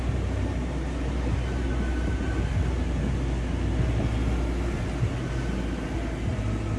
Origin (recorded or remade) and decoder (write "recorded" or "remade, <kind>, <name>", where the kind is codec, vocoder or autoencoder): recorded